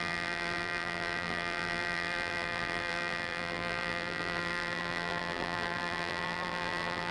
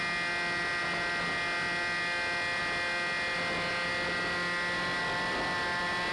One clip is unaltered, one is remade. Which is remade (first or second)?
first